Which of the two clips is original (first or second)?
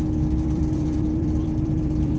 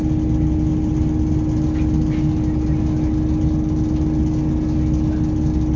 second